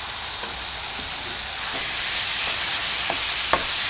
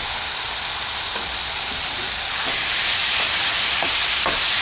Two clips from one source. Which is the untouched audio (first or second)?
first